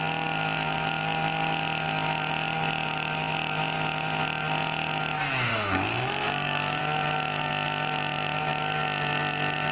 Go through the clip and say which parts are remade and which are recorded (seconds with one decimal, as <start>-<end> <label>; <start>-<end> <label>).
0.0-5.5 recorded; 5.5-6.8 remade; 6.8-9.7 recorded